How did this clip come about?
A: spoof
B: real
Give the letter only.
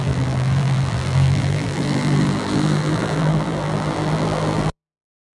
A